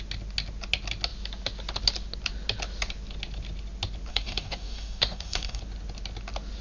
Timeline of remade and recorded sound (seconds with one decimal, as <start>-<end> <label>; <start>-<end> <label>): 0.0-4.1 recorded; 4.1-5.6 remade; 5.6-6.6 recorded